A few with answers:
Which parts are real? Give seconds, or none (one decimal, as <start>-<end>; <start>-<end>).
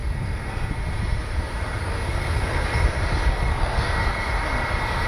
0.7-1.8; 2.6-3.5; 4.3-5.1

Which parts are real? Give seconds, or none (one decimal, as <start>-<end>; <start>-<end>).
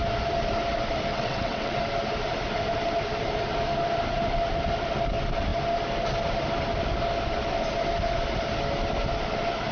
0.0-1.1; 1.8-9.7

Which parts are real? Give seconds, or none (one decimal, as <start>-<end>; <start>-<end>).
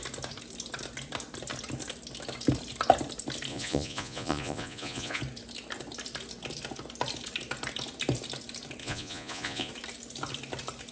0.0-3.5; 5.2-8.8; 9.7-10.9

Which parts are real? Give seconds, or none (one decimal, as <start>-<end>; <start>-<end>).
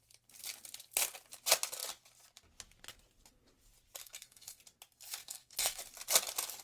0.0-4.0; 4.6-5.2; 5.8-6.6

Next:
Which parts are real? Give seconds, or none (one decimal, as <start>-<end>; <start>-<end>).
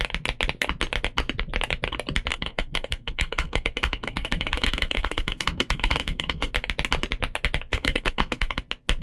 0.0-2.3; 6.5-7.7; 8.6-9.0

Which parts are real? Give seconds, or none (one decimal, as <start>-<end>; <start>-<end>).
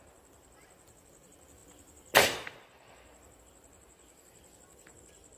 0.0-5.4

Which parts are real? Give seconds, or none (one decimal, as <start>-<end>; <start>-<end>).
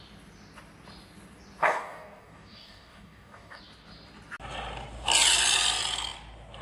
0.0-1.6; 3.6-6.6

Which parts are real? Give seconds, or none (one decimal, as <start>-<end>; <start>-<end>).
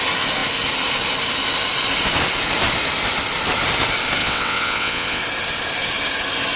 0.0-4.2; 5.2-6.6